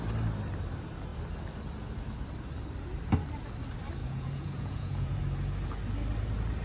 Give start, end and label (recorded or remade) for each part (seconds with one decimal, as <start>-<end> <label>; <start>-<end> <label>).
0.0-4.0 recorded; 4.0-5.2 remade; 5.2-6.6 recorded